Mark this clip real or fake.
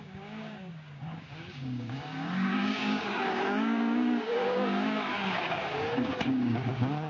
fake